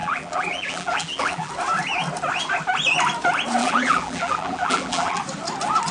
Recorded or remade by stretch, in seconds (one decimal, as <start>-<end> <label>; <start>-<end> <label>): 0.0-1.5 remade; 1.5-3.6 recorded; 3.6-5.2 remade; 5.2-5.9 recorded